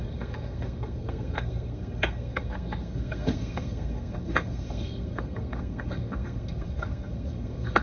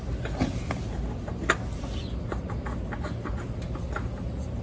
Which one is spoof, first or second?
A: first